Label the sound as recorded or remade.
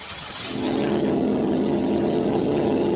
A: remade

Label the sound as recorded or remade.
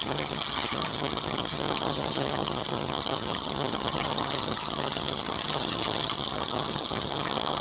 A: remade